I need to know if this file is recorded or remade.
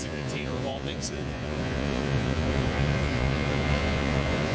remade